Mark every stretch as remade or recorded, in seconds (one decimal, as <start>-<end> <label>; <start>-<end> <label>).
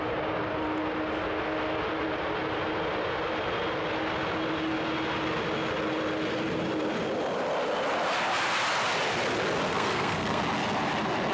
0.0-9.7 recorded; 9.7-10.4 remade; 10.4-11.3 recorded